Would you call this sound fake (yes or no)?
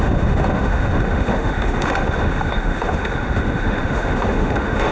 yes